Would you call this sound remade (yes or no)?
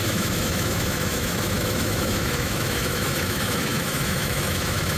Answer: yes